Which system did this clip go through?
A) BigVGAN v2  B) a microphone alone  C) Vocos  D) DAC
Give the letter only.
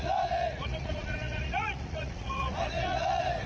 C